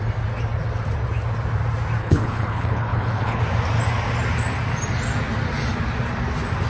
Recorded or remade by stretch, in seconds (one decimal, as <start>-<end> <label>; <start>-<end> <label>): 0.0-2.0 recorded; 2.0-3.4 remade; 3.4-6.7 recorded